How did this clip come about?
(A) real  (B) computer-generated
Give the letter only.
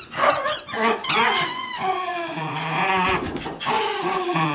B